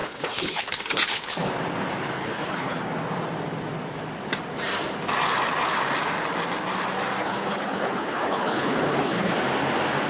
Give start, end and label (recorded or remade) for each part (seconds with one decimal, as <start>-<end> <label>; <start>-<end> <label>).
0.0-1.5 remade; 1.5-2.2 recorded; 2.2-2.8 remade; 2.8-7.2 recorded; 7.2-9.3 remade; 9.3-10.1 recorded